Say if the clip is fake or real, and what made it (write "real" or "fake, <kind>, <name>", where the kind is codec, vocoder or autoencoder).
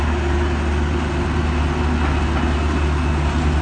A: real